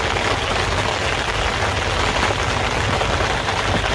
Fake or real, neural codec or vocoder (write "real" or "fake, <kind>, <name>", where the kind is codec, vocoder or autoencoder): real